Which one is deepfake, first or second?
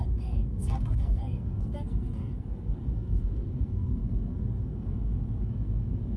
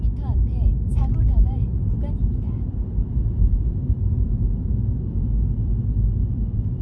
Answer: first